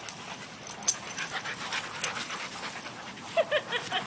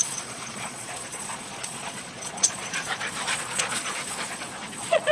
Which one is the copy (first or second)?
second